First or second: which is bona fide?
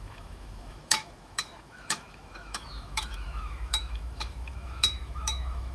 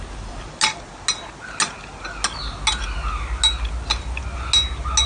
second